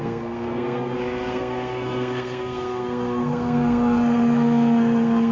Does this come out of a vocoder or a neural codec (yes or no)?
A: yes